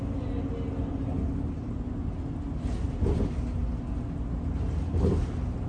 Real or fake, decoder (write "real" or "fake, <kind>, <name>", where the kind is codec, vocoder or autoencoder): real